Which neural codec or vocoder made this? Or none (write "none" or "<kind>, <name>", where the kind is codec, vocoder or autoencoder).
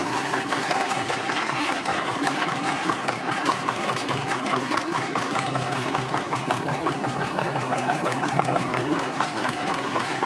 codec, SNAC